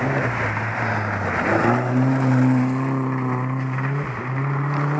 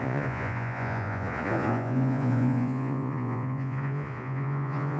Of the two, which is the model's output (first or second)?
second